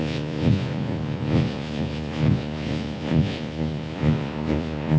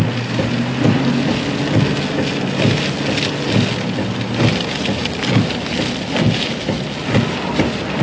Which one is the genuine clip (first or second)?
second